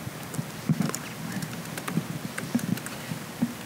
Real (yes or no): yes